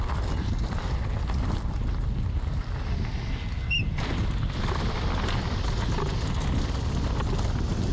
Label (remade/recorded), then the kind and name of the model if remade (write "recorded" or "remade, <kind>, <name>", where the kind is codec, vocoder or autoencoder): recorded